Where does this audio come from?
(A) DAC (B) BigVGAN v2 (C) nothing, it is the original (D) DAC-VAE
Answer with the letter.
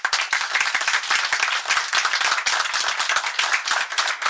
B